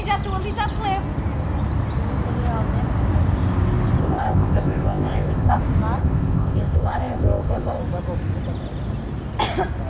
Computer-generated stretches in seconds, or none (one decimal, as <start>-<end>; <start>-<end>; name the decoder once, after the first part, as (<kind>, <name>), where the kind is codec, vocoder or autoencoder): 4.0-5.6 (codec, ZipCodec); 6.0-7.8